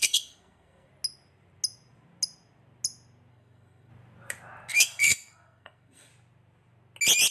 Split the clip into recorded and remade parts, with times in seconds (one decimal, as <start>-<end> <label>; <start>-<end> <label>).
0.0-0.9 remade; 0.9-3.3 recorded; 3.3-3.9 remade; 3.9-4.7 recorded; 4.7-6.1 remade; 6.1-7.3 recorded